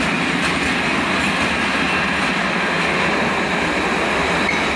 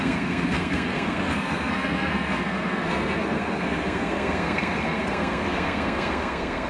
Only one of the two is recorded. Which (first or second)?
first